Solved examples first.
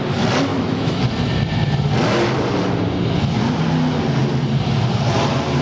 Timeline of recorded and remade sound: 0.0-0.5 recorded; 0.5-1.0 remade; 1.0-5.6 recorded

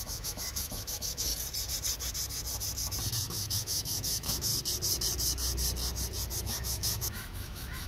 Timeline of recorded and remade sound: 0.0-1.3 remade; 1.3-3.1 recorded; 3.1-4.5 remade; 4.5-6.4 recorded; 6.4-7.9 remade

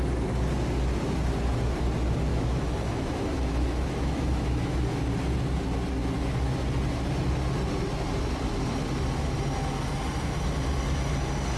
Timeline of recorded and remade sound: 0.0-2.3 recorded; 2.3-5.0 remade; 5.0-11.6 recorded